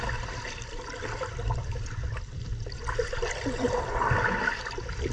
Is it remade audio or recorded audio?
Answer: remade